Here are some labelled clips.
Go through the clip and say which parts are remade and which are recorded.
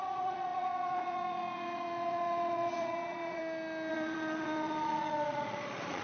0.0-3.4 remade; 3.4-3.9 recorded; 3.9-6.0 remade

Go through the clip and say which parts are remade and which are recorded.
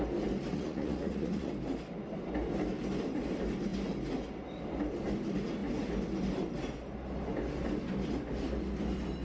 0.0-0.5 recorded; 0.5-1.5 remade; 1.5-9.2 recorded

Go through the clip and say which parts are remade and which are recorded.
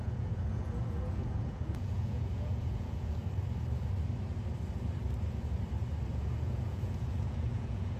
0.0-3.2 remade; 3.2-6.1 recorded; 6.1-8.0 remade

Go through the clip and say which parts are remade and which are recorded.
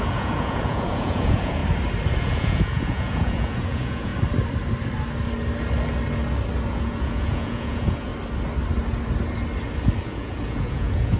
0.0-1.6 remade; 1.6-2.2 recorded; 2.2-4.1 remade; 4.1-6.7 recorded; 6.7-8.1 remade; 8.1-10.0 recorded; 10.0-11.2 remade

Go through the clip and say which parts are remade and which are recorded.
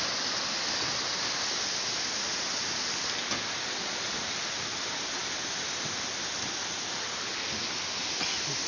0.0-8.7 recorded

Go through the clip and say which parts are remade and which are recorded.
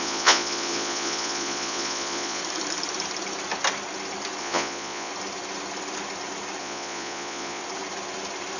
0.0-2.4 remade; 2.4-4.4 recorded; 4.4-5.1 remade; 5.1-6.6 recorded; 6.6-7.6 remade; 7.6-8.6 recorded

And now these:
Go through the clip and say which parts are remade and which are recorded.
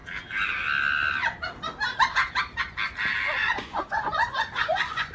0.0-3.4 recorded; 3.4-5.1 remade